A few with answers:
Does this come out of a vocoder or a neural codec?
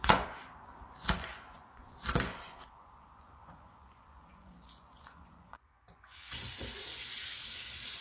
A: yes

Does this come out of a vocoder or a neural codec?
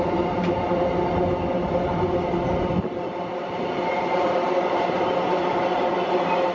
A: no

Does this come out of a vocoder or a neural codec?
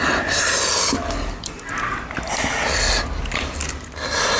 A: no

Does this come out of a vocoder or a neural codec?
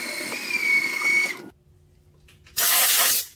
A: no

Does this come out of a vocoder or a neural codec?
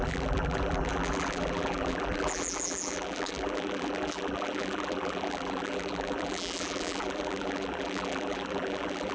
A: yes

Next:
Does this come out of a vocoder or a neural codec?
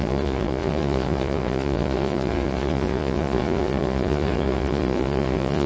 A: yes